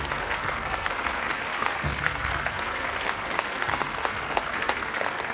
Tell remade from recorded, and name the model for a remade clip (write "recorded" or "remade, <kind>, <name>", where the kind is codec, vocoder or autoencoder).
remade, codec, SNAC